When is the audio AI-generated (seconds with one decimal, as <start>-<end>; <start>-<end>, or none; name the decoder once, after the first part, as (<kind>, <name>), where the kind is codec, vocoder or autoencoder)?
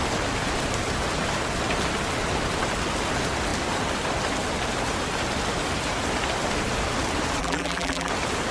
7.4-8.1 (vocoder, BigVGAN v2)